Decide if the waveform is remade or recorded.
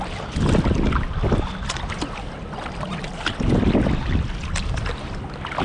recorded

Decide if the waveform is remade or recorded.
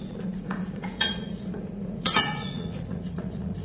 remade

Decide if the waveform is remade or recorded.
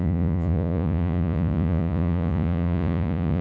remade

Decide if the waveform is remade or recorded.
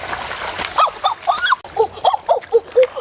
recorded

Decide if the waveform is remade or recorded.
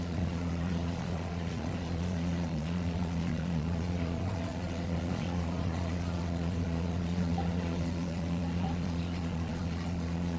remade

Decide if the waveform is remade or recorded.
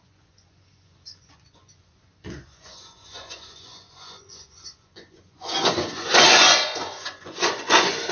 remade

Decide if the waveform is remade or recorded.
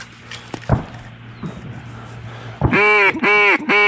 recorded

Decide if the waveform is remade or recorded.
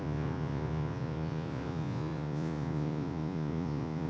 remade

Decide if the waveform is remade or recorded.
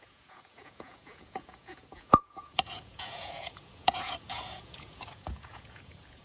remade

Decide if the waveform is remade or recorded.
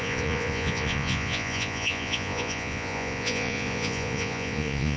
remade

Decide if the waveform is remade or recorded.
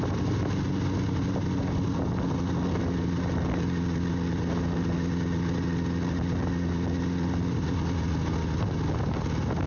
recorded